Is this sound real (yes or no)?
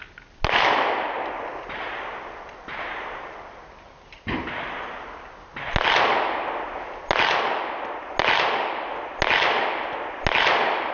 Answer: yes